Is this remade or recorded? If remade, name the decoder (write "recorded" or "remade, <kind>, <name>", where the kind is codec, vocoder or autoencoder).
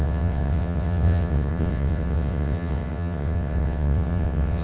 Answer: remade, vocoder, WaveNeXt